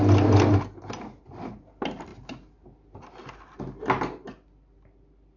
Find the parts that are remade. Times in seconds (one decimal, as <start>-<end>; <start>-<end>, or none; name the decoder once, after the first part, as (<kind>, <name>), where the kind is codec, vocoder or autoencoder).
none